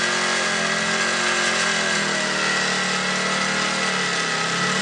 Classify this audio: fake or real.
real